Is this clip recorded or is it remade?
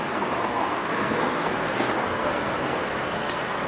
remade